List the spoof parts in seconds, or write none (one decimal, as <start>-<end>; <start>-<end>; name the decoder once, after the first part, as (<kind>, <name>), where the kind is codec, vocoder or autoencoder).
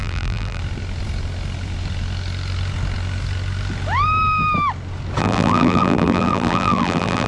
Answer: 0.0-0.6 (vocoder, BigVGAN v2); 5.2-7.3